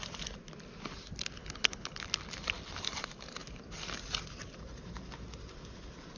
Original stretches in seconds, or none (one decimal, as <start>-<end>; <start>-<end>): 0.0-1.4; 2.0-6.2